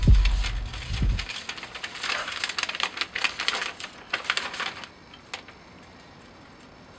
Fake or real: real